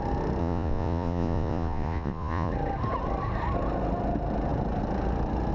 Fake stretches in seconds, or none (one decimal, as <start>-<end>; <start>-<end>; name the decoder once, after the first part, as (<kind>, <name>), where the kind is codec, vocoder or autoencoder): 0.4-2.5 (vocoder, Vocos)